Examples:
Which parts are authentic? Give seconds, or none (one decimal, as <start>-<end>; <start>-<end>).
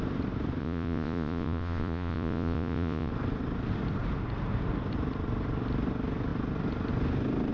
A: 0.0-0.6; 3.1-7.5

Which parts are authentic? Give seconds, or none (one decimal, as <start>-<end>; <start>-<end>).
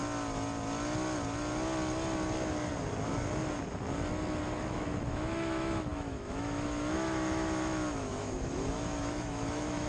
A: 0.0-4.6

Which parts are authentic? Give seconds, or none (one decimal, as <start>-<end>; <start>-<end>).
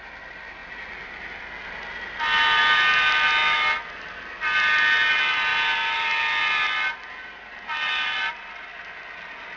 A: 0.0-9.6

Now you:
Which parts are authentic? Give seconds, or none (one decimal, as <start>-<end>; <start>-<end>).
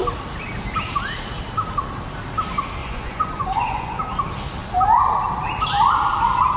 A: 0.0-2.8; 4.0-6.6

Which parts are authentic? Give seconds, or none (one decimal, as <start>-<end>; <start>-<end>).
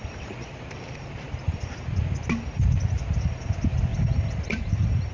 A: 0.0-3.9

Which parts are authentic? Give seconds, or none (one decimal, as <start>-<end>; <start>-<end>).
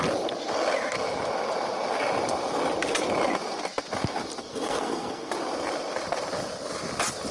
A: 0.0-4.4; 5.3-7.3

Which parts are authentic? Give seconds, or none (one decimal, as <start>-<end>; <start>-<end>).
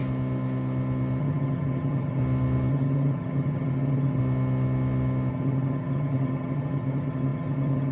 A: 0.0-1.2; 2.2-2.7; 4.2-5.3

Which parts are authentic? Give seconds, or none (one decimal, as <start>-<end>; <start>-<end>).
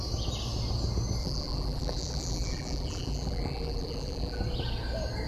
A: 0.0-1.2; 4.4-5.3